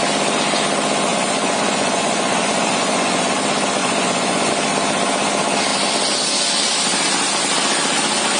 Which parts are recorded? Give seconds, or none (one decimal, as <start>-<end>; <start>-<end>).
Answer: 0.0-1.1; 3.3-3.8; 4.5-8.4